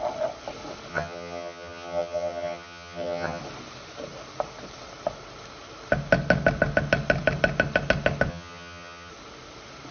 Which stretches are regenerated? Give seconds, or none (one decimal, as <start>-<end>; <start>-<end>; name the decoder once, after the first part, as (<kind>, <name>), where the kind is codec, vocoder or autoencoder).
0.9-3.4 (vocoder, HiFi-GAN); 8.3-9.1